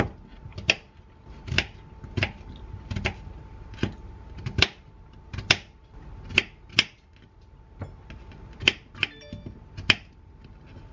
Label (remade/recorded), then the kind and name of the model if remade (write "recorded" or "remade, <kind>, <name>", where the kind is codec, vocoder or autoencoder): recorded